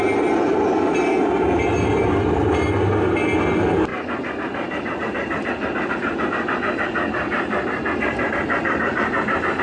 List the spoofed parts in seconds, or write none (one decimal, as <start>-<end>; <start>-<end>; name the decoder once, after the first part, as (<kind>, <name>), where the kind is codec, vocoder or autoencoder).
none